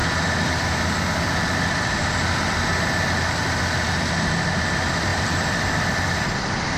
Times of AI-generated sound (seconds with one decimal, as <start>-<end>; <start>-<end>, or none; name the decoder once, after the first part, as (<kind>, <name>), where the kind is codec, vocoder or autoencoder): 0.0-4.1 (vocoder, BigVGAN v2); 5.1-6.8